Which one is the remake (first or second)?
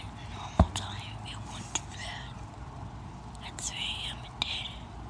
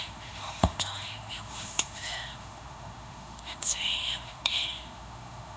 second